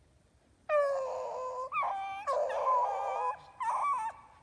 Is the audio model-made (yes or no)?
no